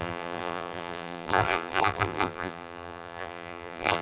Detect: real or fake fake